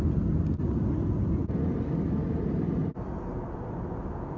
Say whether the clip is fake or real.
real